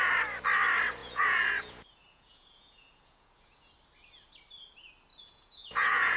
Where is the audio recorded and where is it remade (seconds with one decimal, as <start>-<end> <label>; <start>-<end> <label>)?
0.0-1.0 recorded; 1.0-3.7 remade; 3.7-5.1 recorded; 5.1-6.2 remade